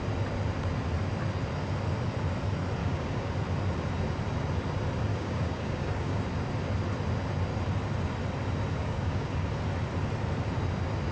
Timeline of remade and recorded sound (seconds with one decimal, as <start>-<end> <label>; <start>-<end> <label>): 0.0-2.8 recorded; 2.8-3.3 remade; 3.3-5.1 recorded; 5.1-6.2 remade; 6.2-8.8 recorded; 8.8-9.5 remade; 9.5-11.1 recorded